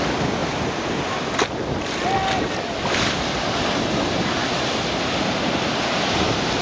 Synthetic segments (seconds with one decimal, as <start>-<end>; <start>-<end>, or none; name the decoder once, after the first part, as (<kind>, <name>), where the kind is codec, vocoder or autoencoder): none